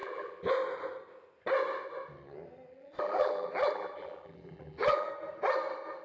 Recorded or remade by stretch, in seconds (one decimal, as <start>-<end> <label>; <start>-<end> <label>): 0.0-0.5 remade; 0.5-2.7 recorded; 2.7-5.1 remade; 5.1-6.0 recorded